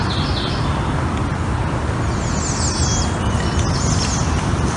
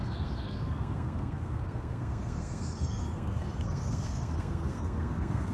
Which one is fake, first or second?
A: second